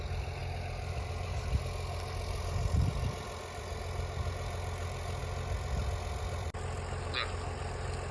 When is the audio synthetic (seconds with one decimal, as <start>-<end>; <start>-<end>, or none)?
none